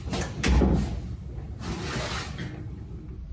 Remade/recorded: recorded